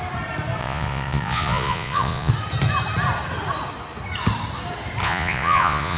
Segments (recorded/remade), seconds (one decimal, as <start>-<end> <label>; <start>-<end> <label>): 0.0-0.6 recorded; 0.6-2.3 remade; 2.3-5.0 recorded; 5.0-6.0 remade